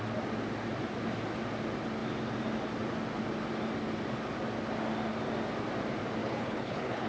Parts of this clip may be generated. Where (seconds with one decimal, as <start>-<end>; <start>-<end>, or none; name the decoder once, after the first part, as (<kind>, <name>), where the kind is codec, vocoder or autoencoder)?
6.2-7.1 (codec, HILCodec)